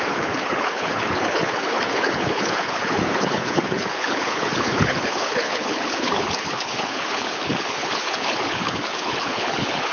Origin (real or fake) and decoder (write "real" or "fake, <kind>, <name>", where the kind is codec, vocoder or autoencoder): fake, codec, HILCodec